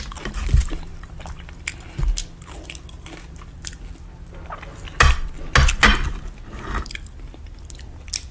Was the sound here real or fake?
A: real